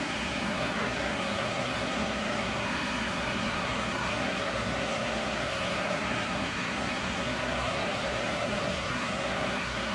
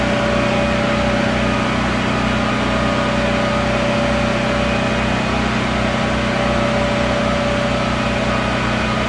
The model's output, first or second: first